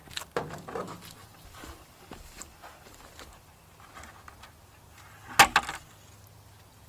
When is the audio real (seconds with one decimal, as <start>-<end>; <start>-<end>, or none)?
0.0-1.2; 3.0-6.9